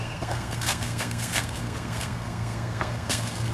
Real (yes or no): no